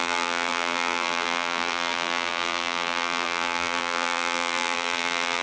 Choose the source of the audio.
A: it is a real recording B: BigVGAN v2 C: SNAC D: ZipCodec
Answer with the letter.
B